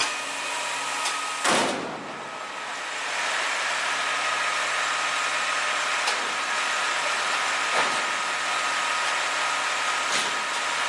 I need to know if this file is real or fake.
real